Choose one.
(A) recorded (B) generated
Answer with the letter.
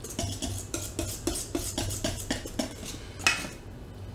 A